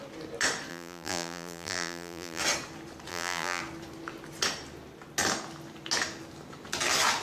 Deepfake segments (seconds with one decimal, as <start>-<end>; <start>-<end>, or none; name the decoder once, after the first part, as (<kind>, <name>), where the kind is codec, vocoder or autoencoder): 0.7-2.4 (vocoder, BigVGAN v2); 3.1-3.6

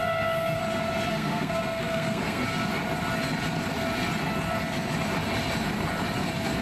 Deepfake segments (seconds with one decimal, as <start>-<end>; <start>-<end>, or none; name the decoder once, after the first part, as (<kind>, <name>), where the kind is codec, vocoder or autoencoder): 0.0-0.6 (codec, SNAC); 1.1-2.4

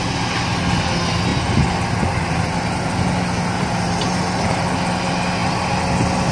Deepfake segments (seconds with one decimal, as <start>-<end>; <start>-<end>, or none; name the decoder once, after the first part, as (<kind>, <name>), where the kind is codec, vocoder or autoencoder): none

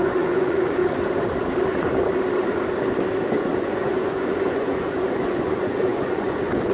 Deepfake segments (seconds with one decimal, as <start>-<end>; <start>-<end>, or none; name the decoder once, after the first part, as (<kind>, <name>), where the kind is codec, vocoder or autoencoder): 0.0-0.8 (vocoder, Vocos); 3.4-6.7

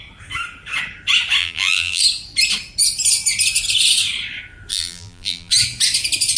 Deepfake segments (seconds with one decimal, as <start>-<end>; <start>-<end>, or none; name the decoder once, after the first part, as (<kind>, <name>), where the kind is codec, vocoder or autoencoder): 1.4-2.0 (vocoder, BigVGAN v2); 4.7-5.5

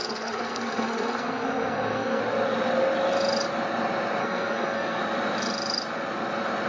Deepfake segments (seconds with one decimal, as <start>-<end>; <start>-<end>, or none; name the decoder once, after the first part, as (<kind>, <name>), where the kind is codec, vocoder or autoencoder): 0.0-2.2 (codec, SNAC); 4.2-5.0

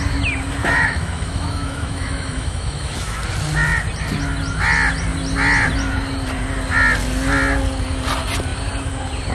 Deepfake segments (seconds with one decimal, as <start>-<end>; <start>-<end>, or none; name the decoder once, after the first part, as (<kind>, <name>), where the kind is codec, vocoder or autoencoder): 0.6-3.2 (autoencoder, DAC-VAE)